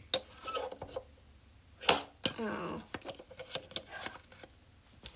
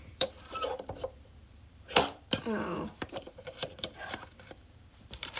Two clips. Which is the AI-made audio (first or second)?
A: second